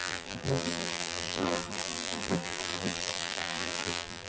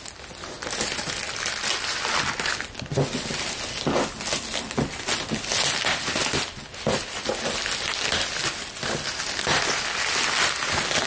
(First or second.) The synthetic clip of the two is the first